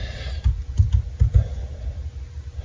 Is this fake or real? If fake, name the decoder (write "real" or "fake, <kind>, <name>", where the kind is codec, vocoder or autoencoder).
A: real